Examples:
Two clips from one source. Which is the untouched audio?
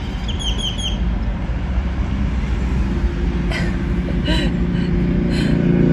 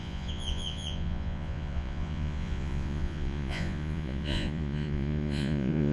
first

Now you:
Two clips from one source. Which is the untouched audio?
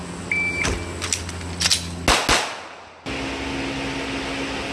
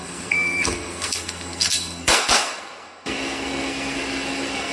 first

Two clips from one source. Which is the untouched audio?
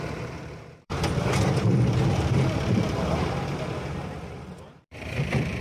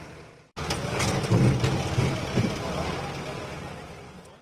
second